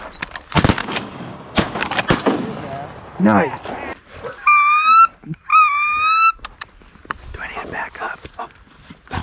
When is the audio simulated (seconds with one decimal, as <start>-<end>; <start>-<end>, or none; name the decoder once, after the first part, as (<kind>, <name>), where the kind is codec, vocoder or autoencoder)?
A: 0.8-1.9 (codec, DAC)